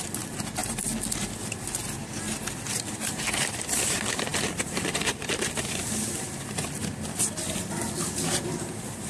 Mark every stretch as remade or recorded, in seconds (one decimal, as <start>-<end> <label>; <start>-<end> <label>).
0.0-0.6 remade; 0.6-1.4 recorded; 1.4-9.1 remade